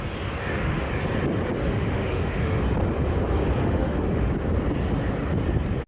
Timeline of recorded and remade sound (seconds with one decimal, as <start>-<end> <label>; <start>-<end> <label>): 0.0-0.4 recorded; 0.4-0.9 remade; 0.9-1.6 recorded; 1.6-2.6 remade; 2.6-3.6 recorded; 3.6-4.3 remade; 4.3-5.9 recorded